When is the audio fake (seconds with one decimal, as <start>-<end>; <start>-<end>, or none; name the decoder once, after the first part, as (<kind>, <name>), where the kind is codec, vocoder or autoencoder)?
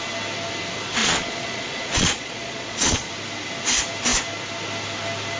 1.0-3.1 (vocoder, Vocos)